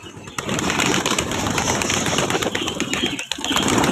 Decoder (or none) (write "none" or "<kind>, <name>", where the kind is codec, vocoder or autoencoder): vocoder, BigVGAN v2